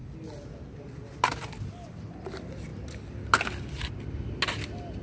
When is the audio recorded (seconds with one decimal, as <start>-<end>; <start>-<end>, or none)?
0.0-5.0